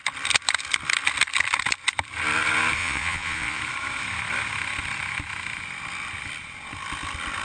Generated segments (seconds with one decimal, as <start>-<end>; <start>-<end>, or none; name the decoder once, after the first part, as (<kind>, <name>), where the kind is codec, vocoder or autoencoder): 2.8-3.6 (vocoder, Vocos)